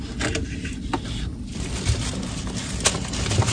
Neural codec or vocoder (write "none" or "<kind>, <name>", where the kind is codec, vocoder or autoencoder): none